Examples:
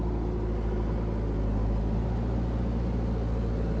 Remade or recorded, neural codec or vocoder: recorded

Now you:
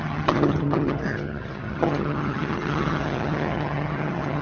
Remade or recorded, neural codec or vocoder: remade, vocoder, HiFi-GAN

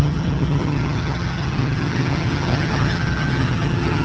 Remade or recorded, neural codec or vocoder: remade, vocoder, HiFi-GAN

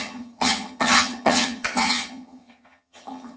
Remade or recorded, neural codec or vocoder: remade, vocoder, HiFi-GAN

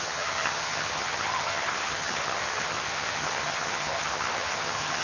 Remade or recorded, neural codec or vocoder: remade, vocoder, HiFi-GAN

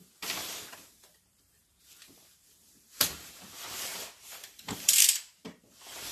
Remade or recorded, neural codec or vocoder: remade, vocoder, BigVGAN v2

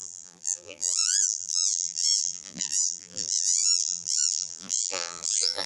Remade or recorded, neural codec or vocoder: remade, vocoder, BigVGAN v2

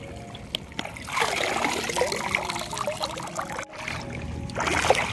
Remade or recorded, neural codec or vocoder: recorded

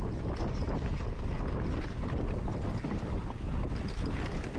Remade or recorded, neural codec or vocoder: recorded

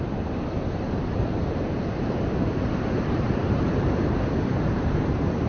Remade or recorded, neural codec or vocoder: remade, vocoder, BigVGAN v2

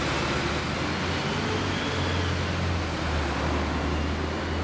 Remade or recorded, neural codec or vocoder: recorded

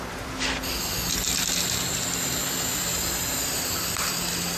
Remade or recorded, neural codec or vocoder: recorded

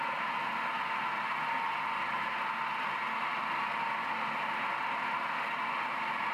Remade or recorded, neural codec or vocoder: recorded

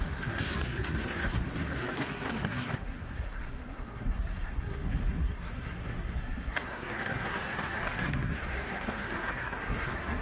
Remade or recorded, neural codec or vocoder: remade, codec, SNAC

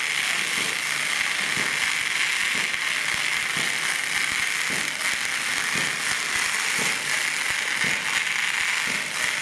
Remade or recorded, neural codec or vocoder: recorded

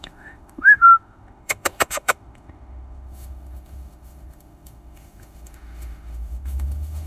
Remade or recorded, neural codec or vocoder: remade, autoencoder, DAC-VAE